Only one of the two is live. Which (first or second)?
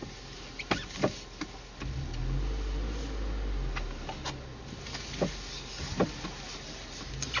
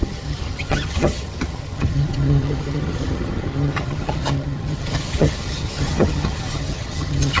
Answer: first